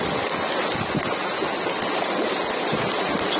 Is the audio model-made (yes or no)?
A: no